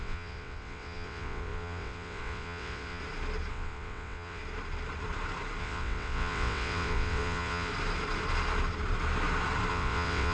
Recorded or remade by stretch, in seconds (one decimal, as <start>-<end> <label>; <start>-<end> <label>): 0.0-3.0 remade; 3.0-3.5 recorded; 3.5-4.4 remade; 4.4-5.6 recorded; 5.6-7.7 remade; 7.7-9.7 recorded; 9.7-10.3 remade